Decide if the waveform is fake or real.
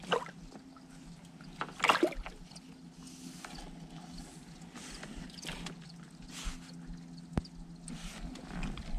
real